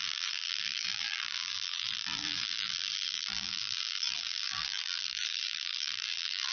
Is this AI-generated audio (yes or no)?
yes